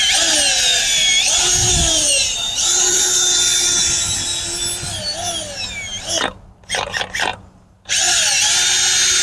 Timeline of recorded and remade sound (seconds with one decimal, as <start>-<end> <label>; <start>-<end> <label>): 0.0-0.7 recorded; 0.7-3.0 remade; 3.0-7.3 recorded; 7.3-8.4 remade; 8.4-9.2 recorded